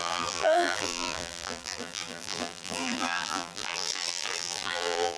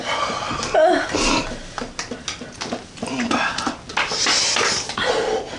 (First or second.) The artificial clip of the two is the first